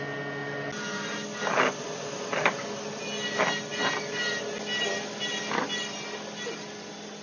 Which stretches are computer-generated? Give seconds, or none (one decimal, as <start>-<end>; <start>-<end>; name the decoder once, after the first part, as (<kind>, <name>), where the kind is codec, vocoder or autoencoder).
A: none